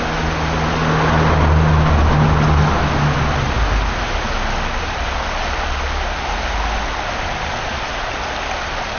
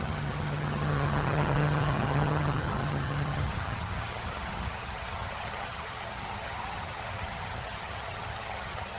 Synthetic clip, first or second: second